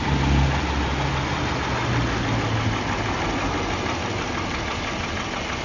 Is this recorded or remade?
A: recorded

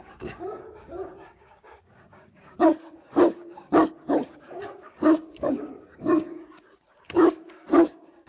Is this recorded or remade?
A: remade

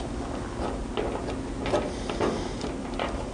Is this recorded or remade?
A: recorded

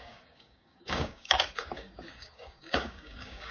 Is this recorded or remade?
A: remade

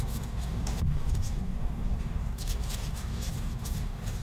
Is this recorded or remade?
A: remade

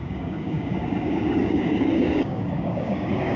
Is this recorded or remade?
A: remade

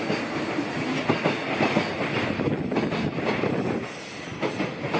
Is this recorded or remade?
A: recorded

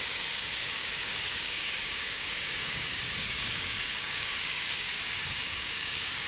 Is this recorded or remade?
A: remade